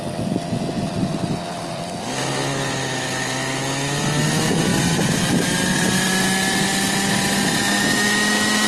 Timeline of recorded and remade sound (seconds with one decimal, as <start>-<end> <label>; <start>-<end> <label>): 0.0-8.7 recorded